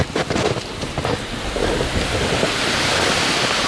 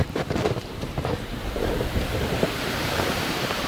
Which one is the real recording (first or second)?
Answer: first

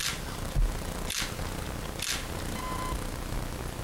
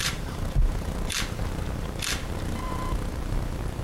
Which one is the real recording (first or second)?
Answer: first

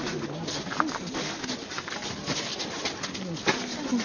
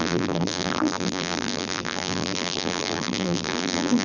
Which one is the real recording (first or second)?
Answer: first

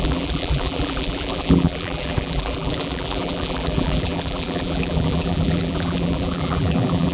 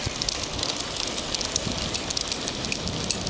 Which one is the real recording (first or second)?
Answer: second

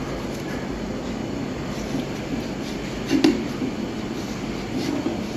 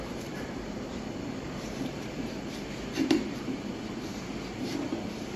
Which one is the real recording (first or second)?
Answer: first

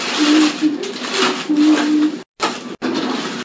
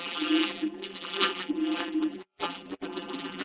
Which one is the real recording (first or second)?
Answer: first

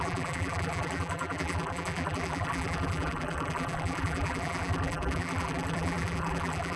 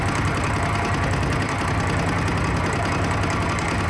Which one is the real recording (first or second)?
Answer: second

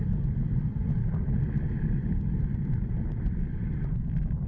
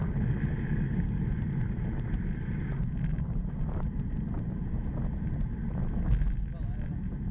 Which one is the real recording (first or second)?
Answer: second